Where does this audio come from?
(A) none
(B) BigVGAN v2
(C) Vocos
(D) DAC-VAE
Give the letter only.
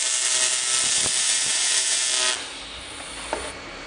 A